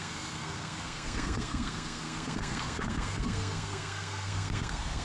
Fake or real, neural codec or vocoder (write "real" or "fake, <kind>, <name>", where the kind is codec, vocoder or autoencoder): fake, codec, SNAC